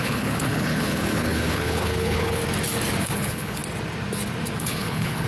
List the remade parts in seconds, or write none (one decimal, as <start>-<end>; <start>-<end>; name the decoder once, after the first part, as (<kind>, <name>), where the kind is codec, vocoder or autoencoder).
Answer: 0.0-2.4 (codec, HILCodec); 3.0-3.6; 4.6-5.3